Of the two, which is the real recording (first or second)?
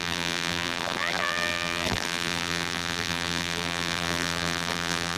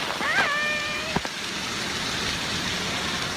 second